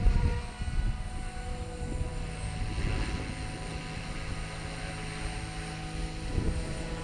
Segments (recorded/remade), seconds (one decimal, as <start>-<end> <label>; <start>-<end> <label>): 0.0-2.1 remade; 2.1-6.3 recorded; 6.3-7.0 remade

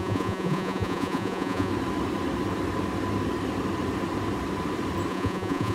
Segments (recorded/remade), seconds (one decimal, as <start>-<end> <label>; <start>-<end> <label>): 0.0-1.7 remade; 1.7-5.1 recorded; 5.1-5.7 remade

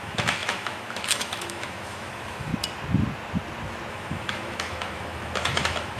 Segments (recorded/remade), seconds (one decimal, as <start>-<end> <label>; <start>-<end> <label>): 0.0-2.5 remade; 2.5-3.9 recorded; 3.9-6.0 remade